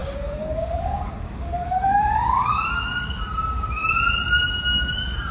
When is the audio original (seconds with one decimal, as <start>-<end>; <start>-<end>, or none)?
3.2-5.3